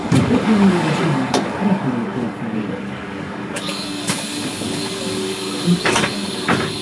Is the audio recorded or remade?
remade